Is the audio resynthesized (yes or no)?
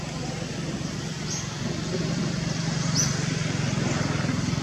no